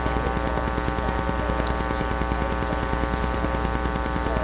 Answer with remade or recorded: recorded